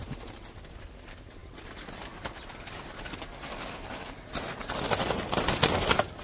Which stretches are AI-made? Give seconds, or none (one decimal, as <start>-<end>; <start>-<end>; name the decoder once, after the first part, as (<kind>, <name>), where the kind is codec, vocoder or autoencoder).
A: none